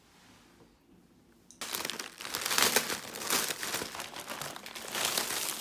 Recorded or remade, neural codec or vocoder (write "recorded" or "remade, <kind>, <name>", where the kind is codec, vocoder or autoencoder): recorded